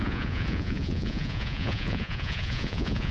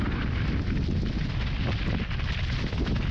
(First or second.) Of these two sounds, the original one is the second